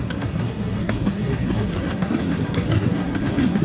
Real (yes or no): no